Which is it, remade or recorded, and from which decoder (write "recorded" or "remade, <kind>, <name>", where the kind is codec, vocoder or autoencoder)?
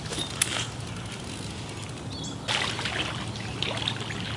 recorded